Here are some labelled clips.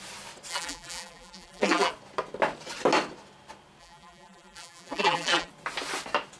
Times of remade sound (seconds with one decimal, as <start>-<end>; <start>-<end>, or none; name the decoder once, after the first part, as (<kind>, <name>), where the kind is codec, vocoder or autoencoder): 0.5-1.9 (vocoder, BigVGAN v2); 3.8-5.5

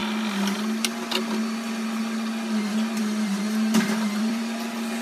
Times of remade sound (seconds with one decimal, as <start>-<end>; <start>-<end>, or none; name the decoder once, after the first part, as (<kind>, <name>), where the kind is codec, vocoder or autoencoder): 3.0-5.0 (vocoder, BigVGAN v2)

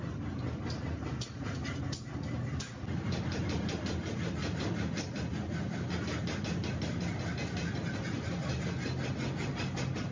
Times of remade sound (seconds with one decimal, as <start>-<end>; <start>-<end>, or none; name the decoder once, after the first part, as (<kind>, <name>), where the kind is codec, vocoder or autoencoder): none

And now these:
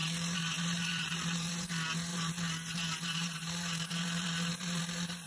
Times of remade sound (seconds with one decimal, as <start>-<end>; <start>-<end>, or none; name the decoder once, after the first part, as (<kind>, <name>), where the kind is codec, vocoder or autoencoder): 0.0-1.7 (vocoder, BigVGAN v2); 2.1-5.3

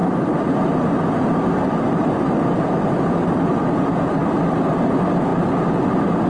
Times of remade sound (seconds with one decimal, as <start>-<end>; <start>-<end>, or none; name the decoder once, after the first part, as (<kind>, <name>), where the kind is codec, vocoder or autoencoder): 0.0-3.8 (vocoder, BigVGAN v2)

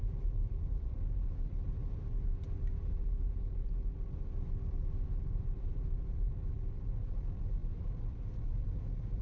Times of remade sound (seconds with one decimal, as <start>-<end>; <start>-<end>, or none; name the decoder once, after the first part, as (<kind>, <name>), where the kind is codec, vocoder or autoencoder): 0.0-1.8 (vocoder, BigVGAN v2); 5.3-6.4; 7.0-9.2

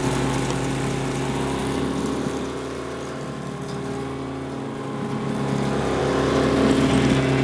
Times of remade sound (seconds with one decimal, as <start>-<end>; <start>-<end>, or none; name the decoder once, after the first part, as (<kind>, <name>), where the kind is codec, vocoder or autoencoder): none